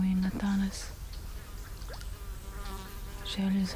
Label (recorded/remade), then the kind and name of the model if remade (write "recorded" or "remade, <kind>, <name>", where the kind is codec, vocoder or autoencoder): recorded